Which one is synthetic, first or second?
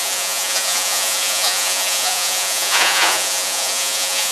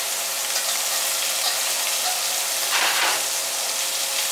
first